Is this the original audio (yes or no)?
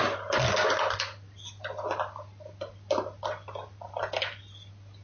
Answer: yes